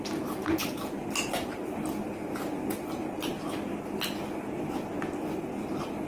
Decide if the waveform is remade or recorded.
recorded